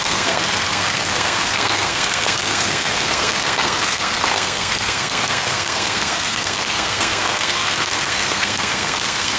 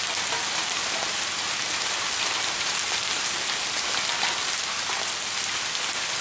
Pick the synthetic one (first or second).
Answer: first